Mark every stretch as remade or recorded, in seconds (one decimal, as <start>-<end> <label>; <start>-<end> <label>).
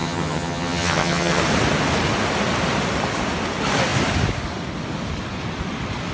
0.0-1.4 remade; 1.4-6.1 recorded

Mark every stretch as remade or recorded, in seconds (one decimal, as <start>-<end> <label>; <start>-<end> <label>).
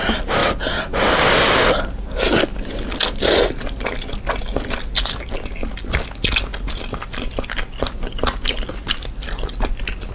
0.0-10.1 recorded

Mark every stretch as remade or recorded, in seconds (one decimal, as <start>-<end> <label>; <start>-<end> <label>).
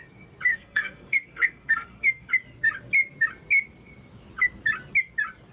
0.0-0.5 recorded; 0.5-2.3 remade; 2.3-5.5 recorded